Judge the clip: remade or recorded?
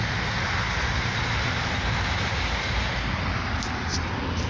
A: recorded